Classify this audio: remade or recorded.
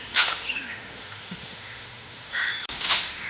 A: remade